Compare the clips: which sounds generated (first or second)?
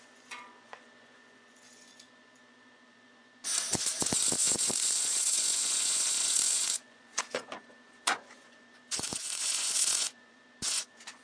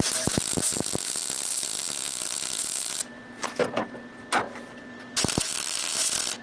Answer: first